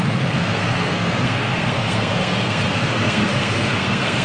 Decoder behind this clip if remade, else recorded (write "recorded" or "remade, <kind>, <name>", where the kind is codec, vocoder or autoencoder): remade, codec, SNAC